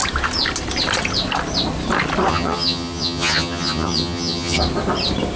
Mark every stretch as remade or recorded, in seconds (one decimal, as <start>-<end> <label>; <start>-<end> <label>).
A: 0.0-2.3 recorded; 2.3-4.6 remade; 4.6-5.4 recorded